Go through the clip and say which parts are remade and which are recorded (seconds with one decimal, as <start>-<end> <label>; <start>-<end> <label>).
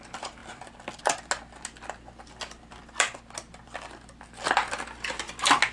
0.0-5.7 recorded